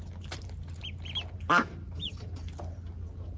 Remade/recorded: recorded